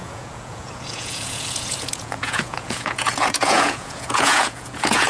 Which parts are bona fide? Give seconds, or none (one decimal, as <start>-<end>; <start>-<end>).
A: none